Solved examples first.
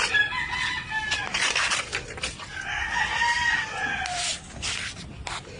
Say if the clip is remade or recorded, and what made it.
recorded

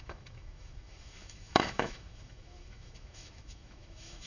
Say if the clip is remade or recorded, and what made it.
remade, autoencoder, DAC-VAE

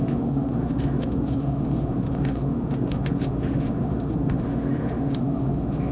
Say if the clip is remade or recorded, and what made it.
remade, autoencoder, DAC-VAE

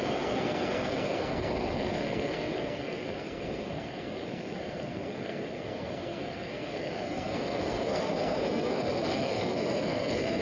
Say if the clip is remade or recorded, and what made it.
remade, codec, SNAC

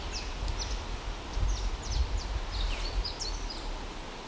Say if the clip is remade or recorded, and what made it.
recorded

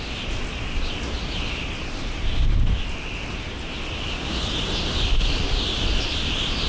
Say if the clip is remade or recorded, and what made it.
recorded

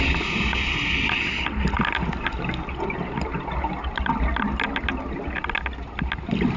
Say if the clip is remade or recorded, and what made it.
recorded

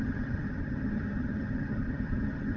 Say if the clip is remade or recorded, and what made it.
remade, vocoder, HiFi-GAN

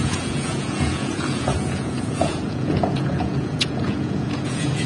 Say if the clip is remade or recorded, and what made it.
remade, vocoder, Vocos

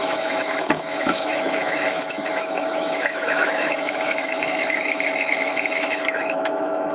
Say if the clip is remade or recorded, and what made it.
remade, autoencoder, DAC-VAE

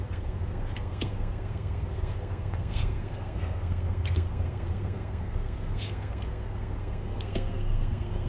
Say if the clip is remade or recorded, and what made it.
remade, codec, SNAC